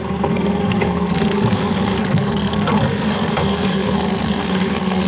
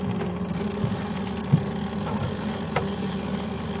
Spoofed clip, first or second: first